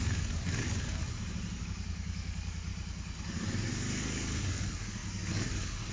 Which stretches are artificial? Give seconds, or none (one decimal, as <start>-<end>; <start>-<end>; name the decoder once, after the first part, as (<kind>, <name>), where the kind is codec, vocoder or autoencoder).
0.0-1.0 (codec, DAC); 1.6-2.7; 3.7-5.9